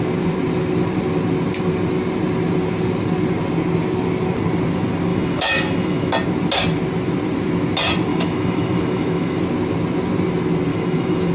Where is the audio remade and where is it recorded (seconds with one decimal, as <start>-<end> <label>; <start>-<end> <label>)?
0.0-5.1 recorded; 5.1-6.1 remade; 6.1-8.1 recorded; 8.1-9.4 remade; 9.4-10.7 recorded; 10.7-11.3 remade